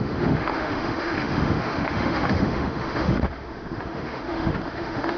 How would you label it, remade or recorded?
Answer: remade